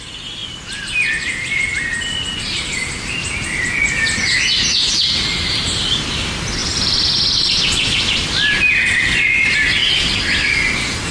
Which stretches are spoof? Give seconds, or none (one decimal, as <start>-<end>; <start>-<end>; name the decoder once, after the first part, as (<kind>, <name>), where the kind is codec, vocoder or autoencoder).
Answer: none